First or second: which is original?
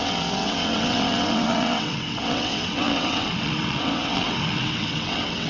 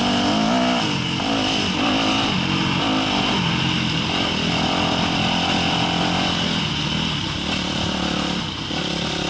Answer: second